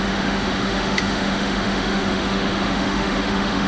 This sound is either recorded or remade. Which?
remade